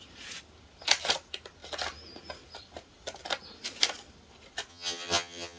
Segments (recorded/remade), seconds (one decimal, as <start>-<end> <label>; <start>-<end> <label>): 0.0-4.7 recorded; 4.7-5.6 remade